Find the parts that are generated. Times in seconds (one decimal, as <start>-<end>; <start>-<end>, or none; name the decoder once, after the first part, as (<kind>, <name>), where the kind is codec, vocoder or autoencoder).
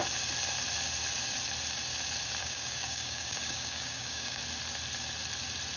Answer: 2.4-4.4 (codec, DAC)